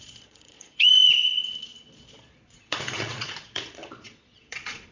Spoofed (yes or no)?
yes